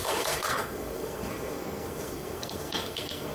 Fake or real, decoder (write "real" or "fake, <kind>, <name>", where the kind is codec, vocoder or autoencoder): fake, codec, SNAC